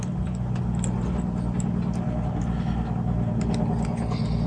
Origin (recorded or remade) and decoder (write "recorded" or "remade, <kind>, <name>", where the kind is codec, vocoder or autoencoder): recorded